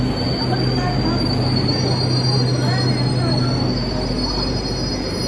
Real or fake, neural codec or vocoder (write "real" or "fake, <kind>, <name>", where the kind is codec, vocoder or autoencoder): real